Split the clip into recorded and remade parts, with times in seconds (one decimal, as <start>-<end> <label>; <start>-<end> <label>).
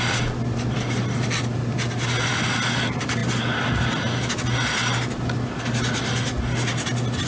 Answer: 0.0-7.3 recorded